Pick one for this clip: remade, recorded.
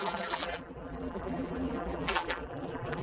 remade